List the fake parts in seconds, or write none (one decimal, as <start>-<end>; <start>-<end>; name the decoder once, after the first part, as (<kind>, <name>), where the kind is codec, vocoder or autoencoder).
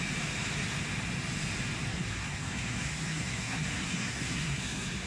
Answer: 1.9-5.1 (codec, SNAC)